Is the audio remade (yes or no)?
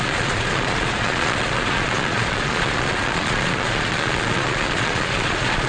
yes